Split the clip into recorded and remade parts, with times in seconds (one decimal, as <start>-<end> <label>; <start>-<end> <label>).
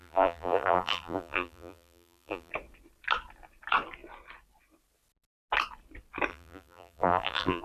0.0-2.5 remade; 2.5-6.3 recorded; 6.3-7.6 remade